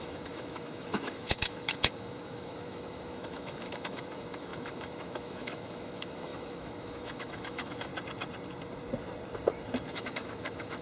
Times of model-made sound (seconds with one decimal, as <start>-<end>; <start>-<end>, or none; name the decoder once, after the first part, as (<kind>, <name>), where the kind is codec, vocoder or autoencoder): 0.0-7.9 (autoencoder, DAC-VAE); 9.9-10.8